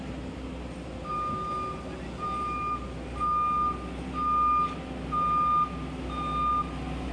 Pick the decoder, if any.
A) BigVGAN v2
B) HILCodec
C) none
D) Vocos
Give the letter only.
C